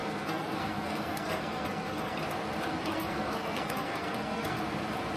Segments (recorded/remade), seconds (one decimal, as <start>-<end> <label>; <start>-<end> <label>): 0.0-2.2 remade; 2.2-2.7 recorded; 2.7-4.6 remade; 4.6-5.2 recorded